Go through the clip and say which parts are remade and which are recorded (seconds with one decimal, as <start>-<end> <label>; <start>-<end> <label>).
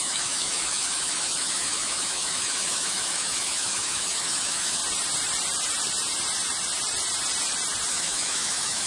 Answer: 0.0-4.8 remade; 4.8-7.9 recorded; 7.9-8.9 remade